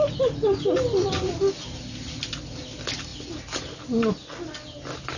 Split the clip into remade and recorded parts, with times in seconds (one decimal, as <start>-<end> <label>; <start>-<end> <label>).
0.0-5.2 recorded